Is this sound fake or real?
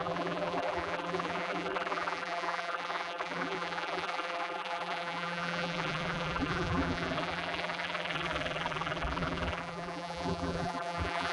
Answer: fake